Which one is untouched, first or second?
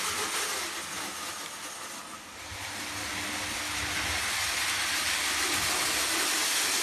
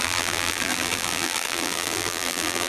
first